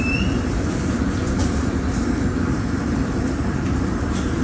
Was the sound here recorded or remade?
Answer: remade